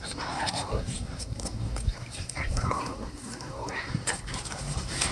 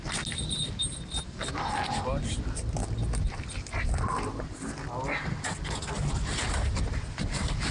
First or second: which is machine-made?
first